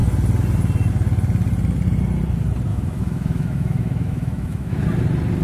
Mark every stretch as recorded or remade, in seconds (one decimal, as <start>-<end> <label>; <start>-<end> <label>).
0.0-2.7 recorded; 2.7-4.8 remade; 4.8-5.4 recorded